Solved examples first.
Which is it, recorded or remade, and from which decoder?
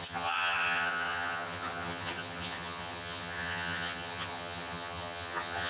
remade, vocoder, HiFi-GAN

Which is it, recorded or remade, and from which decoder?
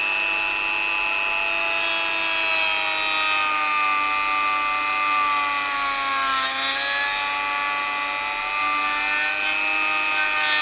recorded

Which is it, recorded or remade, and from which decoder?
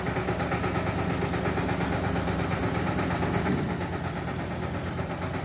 recorded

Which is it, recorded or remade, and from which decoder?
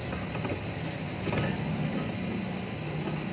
recorded